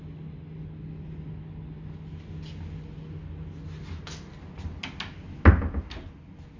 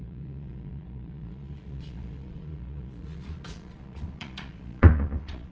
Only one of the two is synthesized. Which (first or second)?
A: second